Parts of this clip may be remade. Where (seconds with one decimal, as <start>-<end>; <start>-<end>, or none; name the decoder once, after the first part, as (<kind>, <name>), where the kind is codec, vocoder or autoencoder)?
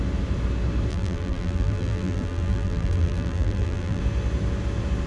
0.9-4.0 (vocoder, BigVGAN v2)